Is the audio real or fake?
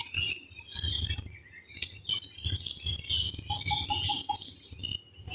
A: real